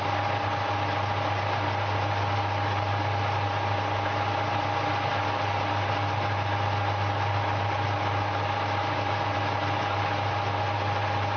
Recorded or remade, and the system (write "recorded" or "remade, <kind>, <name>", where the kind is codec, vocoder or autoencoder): recorded